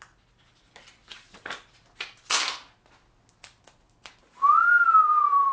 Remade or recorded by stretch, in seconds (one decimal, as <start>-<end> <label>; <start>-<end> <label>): 0.0-5.5 recorded